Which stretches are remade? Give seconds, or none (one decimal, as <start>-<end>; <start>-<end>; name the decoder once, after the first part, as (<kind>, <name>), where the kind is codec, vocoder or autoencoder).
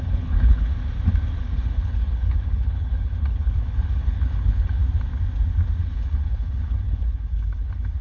0.0-0.7 (codec, HILCodec); 1.4-4.8; 5.8-8.0